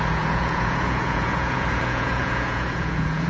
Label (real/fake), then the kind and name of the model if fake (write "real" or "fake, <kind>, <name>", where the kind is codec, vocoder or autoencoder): fake, vocoder, Vocos